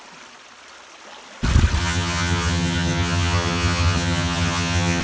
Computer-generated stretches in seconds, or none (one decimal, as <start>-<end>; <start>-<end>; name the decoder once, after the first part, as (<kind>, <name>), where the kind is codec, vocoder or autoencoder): 1.8-5.0 (vocoder, HiFi-GAN)